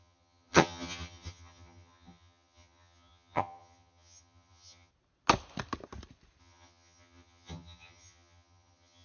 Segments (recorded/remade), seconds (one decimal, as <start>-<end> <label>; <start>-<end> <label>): 0.0-4.9 remade; 4.9-6.4 recorded; 6.4-9.0 remade